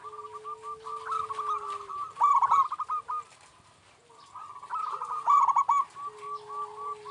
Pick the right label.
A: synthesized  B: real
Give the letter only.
B